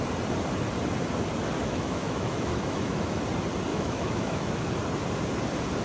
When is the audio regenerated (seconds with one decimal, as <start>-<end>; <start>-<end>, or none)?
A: 1.6-3.2; 3.7-4.7

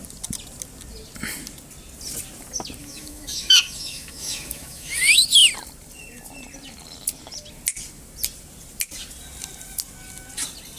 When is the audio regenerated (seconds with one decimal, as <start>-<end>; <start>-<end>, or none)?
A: 2.8-5.0